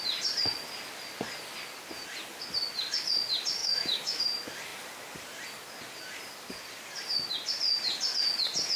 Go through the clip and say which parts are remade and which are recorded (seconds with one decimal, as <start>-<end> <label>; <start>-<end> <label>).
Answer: 0.0-3.6 recorded; 3.6-4.2 remade; 4.2-8.8 recorded